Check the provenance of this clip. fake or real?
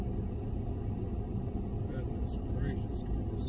real